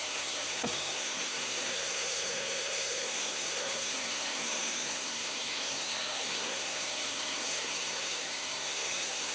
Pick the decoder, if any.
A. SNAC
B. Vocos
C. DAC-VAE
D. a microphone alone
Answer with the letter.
A